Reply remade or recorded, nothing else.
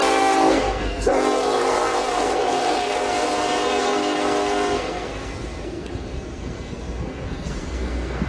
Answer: remade